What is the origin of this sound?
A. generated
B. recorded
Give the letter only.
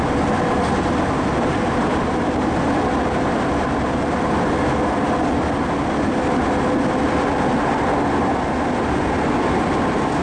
B